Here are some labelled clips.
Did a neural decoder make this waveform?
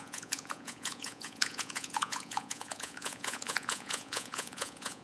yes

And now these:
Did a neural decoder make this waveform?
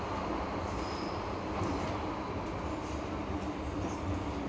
no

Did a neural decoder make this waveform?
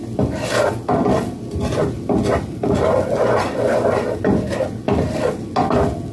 no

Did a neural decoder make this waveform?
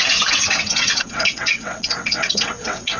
yes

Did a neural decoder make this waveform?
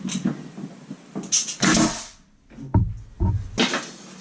no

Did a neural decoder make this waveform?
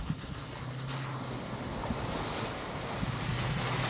no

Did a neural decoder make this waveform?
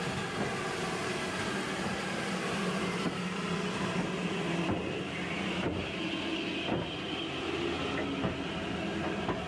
no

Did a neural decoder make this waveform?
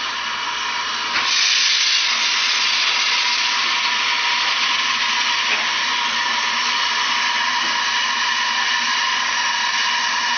no